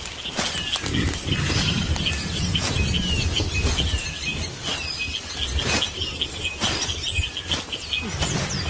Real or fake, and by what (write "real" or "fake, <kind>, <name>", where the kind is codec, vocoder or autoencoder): real